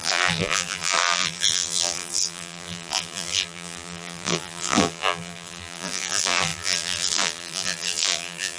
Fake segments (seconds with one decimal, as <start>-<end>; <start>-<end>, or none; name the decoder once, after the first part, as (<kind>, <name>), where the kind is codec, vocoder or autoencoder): 0.0-8.6 (vocoder, BigVGAN v2)